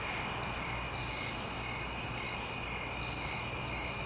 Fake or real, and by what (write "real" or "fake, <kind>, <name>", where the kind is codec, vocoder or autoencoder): real